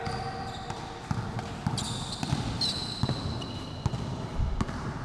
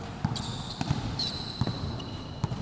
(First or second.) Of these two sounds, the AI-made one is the second